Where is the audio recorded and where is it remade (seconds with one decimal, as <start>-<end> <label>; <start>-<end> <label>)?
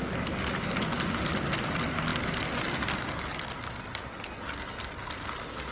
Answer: 0.0-5.7 recorded